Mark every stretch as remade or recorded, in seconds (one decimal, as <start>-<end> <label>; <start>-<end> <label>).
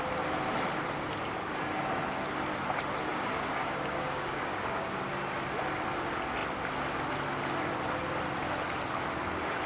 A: 0.0-3.1 recorded; 3.1-5.0 remade; 5.0-9.7 recorded